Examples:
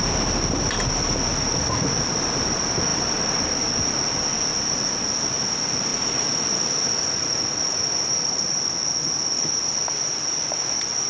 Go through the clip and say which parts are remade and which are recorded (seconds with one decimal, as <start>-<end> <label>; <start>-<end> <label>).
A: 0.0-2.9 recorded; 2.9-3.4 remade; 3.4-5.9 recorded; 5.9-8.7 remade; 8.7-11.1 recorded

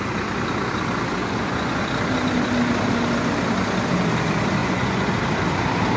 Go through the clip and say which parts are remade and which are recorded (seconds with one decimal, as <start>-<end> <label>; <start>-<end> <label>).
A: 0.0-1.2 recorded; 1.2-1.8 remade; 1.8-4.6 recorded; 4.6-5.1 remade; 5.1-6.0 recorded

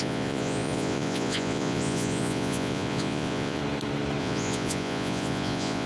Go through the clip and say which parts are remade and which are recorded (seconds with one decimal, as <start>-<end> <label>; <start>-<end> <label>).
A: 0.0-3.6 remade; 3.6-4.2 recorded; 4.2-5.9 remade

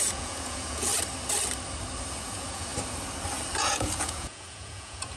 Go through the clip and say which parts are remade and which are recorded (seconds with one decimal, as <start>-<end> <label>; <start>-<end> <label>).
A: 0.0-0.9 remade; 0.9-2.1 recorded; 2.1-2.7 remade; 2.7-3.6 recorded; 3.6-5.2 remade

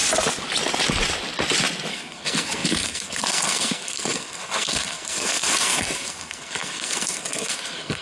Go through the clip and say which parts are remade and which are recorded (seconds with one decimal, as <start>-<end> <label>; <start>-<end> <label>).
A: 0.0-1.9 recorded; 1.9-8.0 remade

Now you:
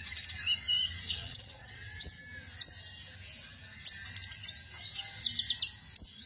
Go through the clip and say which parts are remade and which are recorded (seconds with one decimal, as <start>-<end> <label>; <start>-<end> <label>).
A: 0.0-1.1 recorded; 1.1-2.2 remade; 2.2-6.3 recorded

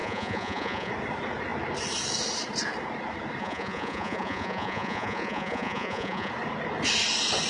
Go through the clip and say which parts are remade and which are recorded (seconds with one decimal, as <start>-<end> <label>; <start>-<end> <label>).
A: 0.0-0.9 remade; 0.9-3.4 recorded; 3.4-6.3 remade; 6.3-7.5 recorded